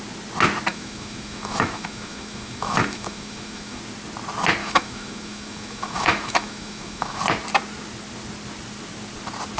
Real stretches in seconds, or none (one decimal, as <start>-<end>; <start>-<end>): 0.0-0.7; 3.8-4.6; 7.2-9.6